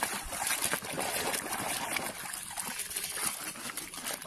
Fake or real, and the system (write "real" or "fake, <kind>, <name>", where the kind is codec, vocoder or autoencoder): real